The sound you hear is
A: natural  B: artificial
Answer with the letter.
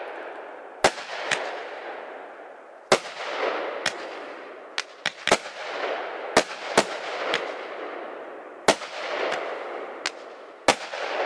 A